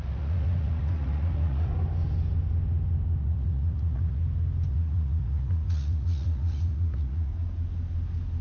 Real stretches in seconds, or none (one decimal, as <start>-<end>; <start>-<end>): 1.7-3.2; 4.2-4.7; 7.3-8.4